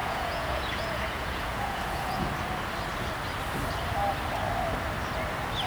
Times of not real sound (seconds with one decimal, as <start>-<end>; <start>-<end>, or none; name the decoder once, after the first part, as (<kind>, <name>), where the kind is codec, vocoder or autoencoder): 0.0-2.3 (vocoder, Vocos)